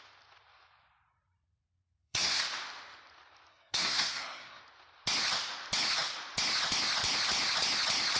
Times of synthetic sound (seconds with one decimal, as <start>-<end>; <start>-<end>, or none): 1.6-2.4; 3.5-4.6